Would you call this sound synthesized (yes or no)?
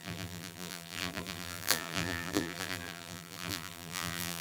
yes